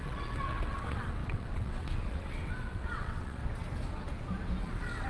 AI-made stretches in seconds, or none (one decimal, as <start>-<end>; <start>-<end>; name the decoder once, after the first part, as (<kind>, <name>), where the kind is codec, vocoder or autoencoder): 0.0-3.4 (vocoder, WaveNeXt); 4.6-5.1